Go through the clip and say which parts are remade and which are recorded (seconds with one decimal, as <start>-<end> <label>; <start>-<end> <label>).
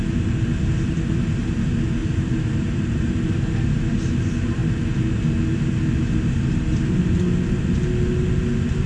0.0-2.0 recorded; 2.0-3.4 remade; 3.4-8.9 recorded